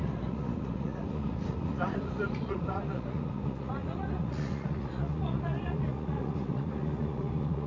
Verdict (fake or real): fake